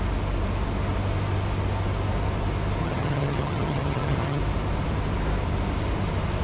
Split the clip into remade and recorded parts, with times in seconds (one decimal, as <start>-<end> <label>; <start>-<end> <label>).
0.0-2.8 recorded; 2.8-4.4 remade; 4.4-6.4 recorded